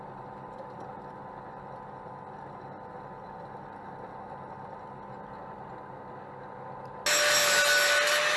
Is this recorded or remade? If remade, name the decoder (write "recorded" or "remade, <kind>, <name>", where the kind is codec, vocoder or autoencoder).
recorded